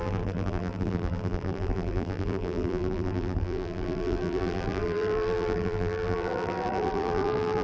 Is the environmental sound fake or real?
fake